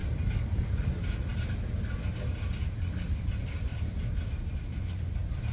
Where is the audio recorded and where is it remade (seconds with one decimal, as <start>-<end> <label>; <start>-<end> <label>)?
0.0-5.5 recorded